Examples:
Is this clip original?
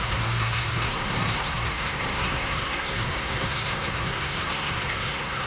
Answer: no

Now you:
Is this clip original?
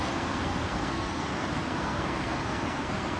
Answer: no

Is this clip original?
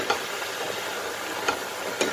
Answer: yes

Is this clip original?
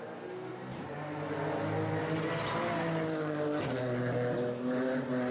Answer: yes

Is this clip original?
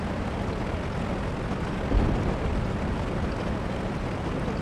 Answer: yes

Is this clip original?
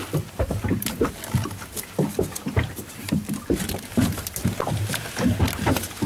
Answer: yes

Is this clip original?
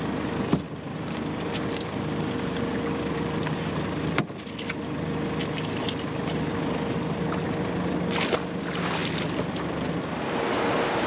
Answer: yes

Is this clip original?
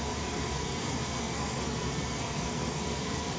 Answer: no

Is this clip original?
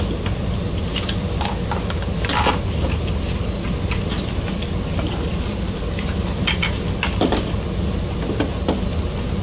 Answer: yes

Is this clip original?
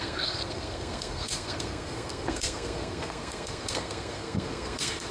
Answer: no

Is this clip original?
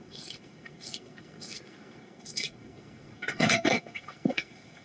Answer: no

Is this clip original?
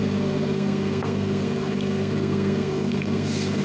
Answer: no